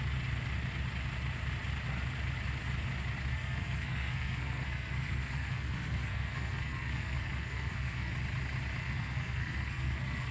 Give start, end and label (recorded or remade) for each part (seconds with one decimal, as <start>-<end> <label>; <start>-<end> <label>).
0.0-3.3 recorded; 3.3-8.1 remade; 8.1-8.8 recorded; 8.8-10.3 remade